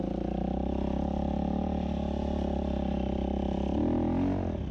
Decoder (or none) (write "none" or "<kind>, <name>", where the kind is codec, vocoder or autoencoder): none